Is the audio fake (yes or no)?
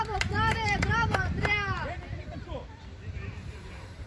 yes